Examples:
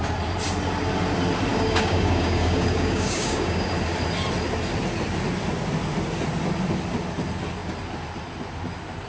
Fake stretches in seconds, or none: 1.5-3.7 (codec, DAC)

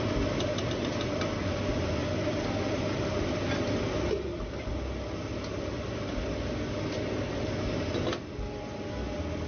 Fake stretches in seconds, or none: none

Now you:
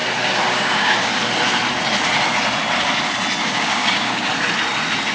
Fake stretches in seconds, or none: 0.5-1.1 (codec, DAC); 3.4-4.3